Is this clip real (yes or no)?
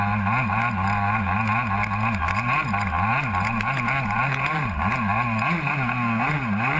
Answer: yes